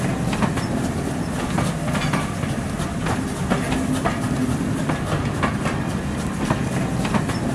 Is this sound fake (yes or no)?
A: no